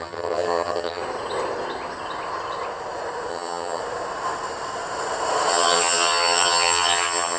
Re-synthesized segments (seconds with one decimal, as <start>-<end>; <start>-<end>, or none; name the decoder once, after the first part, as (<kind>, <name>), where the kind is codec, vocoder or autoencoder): 0.0-1.0 (vocoder, HiFi-GAN); 3.3-3.8; 5.5-7.4

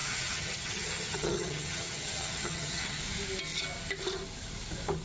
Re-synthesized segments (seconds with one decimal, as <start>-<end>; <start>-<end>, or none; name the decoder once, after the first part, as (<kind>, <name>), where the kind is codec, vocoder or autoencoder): 0.0-3.0 (vocoder, HiFi-GAN)